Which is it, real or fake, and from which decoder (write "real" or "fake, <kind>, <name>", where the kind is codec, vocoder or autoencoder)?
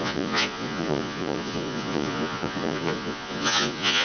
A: fake, vocoder, Vocos